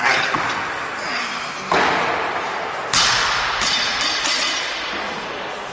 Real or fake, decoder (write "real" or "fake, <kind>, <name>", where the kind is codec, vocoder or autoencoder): real